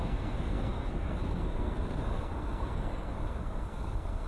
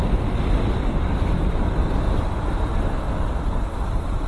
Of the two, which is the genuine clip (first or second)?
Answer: second